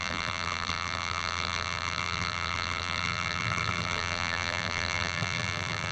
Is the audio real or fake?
fake